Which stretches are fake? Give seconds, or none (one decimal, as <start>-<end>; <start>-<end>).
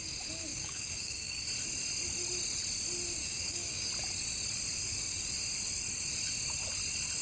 0.5-1.4; 3.2-3.9